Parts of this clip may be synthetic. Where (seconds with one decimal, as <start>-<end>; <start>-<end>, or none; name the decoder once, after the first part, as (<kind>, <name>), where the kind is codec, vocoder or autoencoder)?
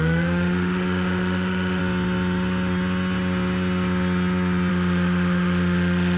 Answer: 0.0-1.8 (autoencoder, DAC-VAE); 4.7-6.2